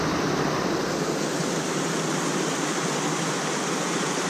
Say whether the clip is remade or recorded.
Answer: recorded